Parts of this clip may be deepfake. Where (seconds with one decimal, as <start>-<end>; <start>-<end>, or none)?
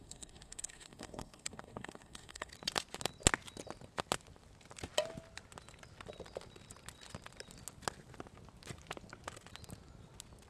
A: 0.0-2.5